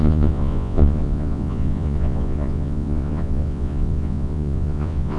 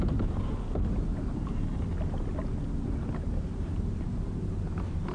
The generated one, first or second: first